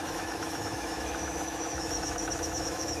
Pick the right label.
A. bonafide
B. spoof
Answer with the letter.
B